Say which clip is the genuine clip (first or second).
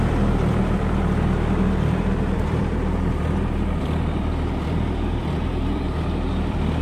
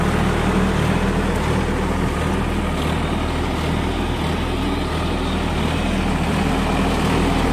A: second